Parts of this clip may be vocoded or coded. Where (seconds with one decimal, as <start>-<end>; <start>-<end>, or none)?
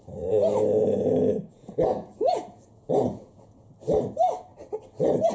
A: 1.5-3.7